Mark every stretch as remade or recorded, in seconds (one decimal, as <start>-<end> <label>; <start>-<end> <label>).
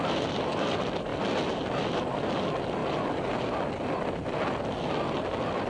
0.0-5.7 recorded